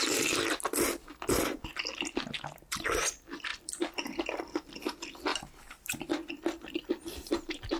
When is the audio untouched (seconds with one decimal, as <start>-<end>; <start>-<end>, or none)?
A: 0.0-1.7; 3.1-3.5; 4.8-5.3; 6.3-7.8